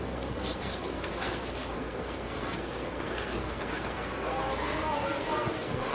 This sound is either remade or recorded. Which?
remade